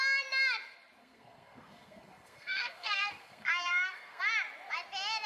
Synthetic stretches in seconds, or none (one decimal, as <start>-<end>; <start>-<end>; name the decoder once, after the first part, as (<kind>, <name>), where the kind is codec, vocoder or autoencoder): 1.0-4.2 (codec, SNAC)